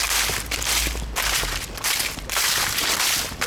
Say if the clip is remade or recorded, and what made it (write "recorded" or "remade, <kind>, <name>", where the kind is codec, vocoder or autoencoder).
recorded